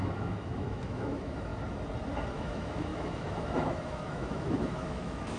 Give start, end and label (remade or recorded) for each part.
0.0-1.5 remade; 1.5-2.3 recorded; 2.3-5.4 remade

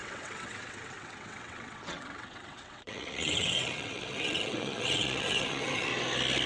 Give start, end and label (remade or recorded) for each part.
0.0-5.9 remade; 5.9-6.5 recorded